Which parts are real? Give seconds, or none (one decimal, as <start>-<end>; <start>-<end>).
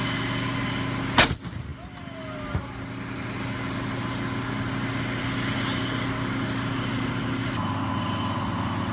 0.0-8.9